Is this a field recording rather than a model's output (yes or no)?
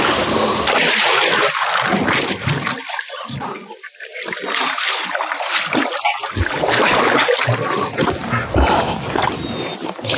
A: yes